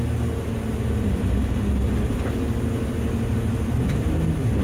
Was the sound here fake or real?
real